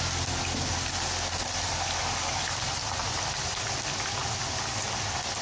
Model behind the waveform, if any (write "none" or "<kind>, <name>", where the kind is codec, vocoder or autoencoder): none